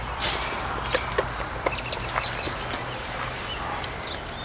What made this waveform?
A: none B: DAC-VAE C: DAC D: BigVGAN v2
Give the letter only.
A